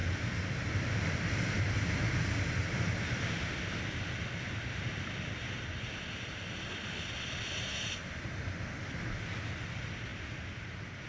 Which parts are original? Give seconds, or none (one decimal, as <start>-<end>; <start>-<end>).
0.0-11.1